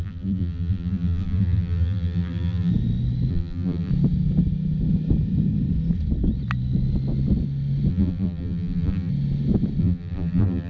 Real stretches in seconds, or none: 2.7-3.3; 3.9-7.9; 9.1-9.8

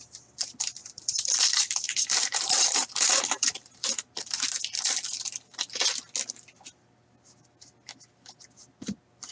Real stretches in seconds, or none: 0.0-0.8; 4.4-9.3

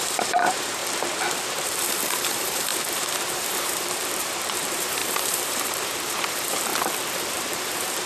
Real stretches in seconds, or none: 0.8-1.4; 6.7-7.3

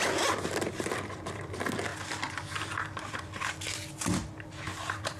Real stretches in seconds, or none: 0.0-5.2

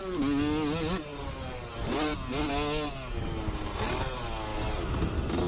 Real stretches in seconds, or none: 0.0-5.5

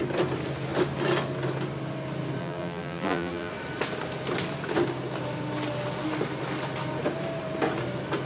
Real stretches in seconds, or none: 0.0-2.4; 3.5-8.3

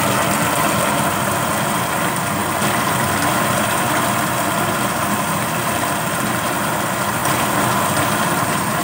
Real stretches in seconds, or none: 0.0-8.8

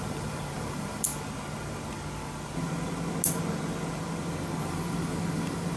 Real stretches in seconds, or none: 1.1-4.6